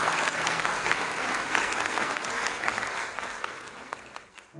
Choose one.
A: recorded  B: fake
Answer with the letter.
B